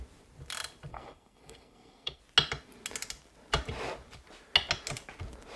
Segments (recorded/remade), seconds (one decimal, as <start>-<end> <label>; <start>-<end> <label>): 0.0-0.9 recorded; 0.9-2.2 remade; 2.2-5.6 recorded